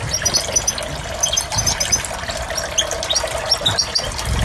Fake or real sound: real